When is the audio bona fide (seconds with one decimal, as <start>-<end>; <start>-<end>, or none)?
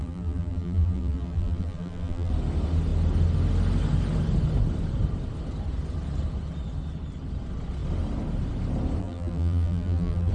2.3-9.0